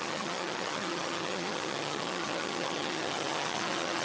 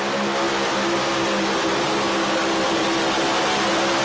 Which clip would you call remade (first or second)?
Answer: first